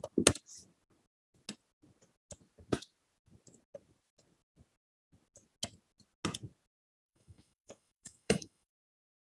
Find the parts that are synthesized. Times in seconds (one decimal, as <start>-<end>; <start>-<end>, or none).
6.9-8.7